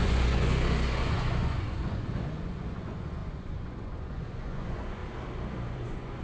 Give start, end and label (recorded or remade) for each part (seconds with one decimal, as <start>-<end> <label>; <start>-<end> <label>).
0.0-5.0 remade; 5.0-5.7 recorded; 5.7-6.2 remade